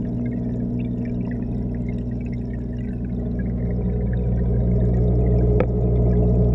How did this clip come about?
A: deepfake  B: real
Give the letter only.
B